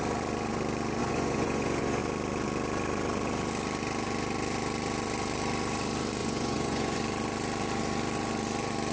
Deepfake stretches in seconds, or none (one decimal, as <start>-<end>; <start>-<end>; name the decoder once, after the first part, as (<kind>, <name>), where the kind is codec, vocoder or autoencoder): 1.0-2.0 (vocoder, Vocos); 6.2-7.0